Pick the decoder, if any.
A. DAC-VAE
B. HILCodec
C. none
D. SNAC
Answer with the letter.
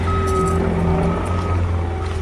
C